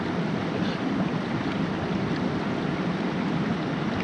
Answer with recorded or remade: recorded